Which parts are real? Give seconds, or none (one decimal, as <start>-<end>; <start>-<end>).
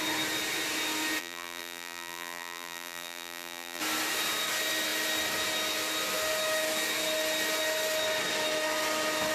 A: 0.0-1.2; 3.8-9.3